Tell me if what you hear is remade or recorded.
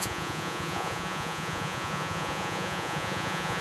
remade